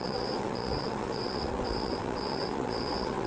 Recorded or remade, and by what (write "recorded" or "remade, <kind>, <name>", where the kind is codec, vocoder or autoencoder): remade, vocoder, WaveNeXt